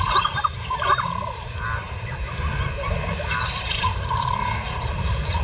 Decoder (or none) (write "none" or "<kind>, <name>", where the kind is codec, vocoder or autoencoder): vocoder, BigVGAN v2